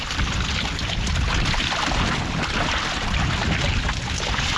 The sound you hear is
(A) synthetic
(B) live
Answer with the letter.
B